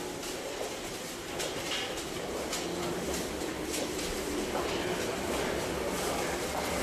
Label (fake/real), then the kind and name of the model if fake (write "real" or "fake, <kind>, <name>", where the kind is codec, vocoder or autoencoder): real